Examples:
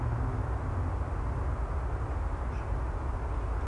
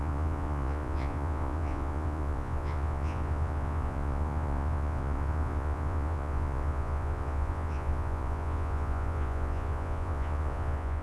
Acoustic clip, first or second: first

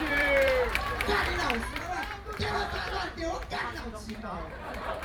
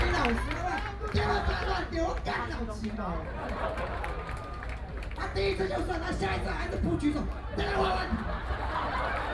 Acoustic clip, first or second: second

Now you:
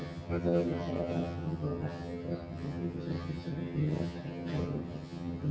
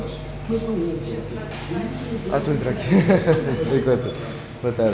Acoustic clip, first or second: second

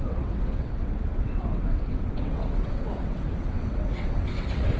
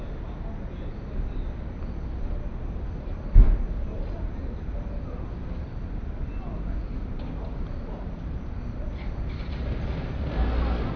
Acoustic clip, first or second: second